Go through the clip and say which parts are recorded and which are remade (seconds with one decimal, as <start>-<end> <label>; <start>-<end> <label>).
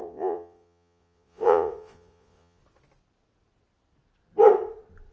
0.0-2.6 remade; 2.6-5.1 recorded